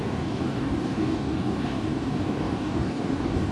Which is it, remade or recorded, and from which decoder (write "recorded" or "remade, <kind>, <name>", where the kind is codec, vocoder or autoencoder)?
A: remade, codec, DAC